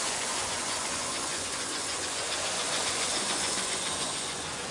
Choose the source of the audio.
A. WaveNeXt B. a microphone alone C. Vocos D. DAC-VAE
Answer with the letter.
C